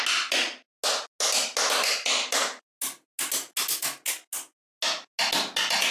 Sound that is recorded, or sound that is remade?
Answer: recorded